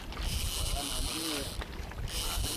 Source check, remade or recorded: recorded